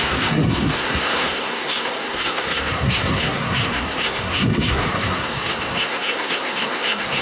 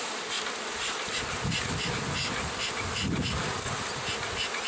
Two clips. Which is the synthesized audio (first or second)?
first